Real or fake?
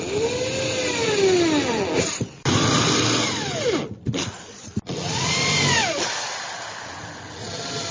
real